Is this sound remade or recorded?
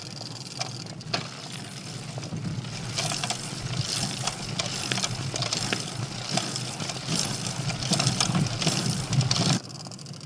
recorded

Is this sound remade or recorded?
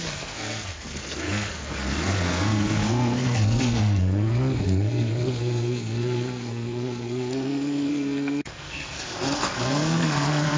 remade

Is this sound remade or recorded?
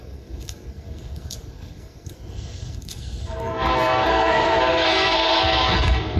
remade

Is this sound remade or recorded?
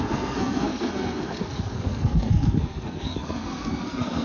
remade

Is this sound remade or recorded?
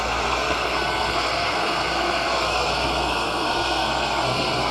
remade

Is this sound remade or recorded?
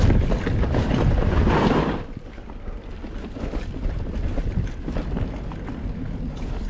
recorded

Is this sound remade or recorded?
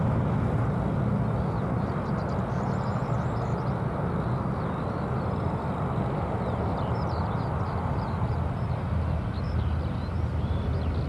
recorded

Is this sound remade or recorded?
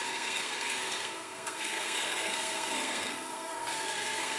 remade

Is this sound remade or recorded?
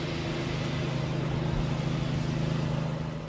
recorded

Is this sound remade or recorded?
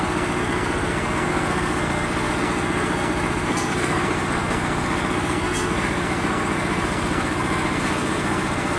remade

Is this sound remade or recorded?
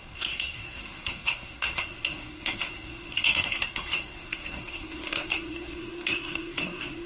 remade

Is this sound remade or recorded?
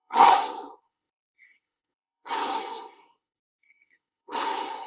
remade